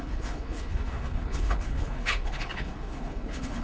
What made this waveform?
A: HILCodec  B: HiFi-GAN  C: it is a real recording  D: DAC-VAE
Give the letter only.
A